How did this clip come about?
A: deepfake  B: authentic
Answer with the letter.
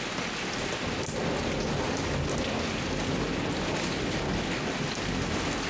B